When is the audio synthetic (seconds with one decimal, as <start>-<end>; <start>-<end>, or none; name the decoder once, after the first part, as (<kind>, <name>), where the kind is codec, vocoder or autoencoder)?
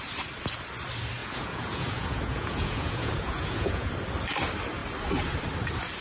1.2-3.9 (vocoder, Vocos)